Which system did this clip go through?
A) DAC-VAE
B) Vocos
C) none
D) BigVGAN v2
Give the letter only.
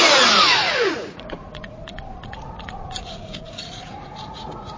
B